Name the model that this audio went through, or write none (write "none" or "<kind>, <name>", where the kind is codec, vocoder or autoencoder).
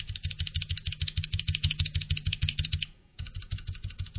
vocoder, Vocos